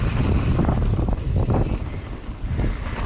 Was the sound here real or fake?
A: real